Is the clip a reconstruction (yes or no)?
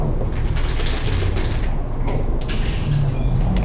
no